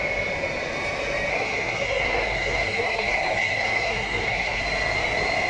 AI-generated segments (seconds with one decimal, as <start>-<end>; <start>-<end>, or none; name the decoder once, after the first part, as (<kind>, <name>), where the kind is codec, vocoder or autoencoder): 1.3-4.6 (codec, SNAC)